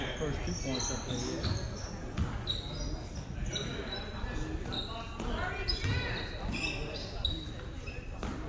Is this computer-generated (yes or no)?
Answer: no